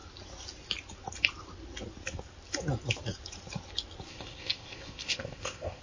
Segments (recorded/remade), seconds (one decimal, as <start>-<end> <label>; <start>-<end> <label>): 0.0-4.1 recorded; 4.1-5.8 remade